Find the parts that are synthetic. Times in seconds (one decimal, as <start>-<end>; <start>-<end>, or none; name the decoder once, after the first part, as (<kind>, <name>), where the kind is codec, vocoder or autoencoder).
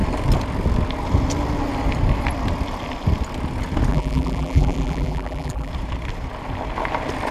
3.9-5.7 (vocoder, BigVGAN v2)